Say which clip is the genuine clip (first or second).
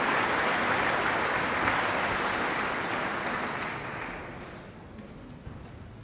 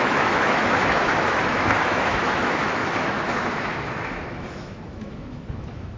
first